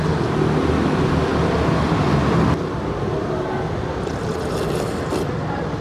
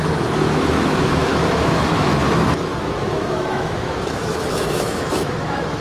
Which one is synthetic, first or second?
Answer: second